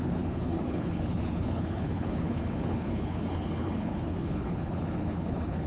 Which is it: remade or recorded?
remade